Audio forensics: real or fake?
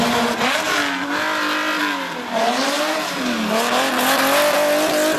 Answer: real